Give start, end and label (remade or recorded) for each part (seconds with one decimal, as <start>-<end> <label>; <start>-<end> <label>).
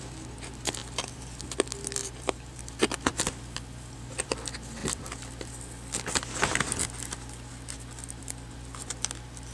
0.0-2.0 recorded; 2.0-2.6 remade; 2.6-9.5 recorded